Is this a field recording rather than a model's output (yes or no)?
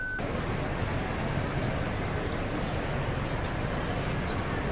yes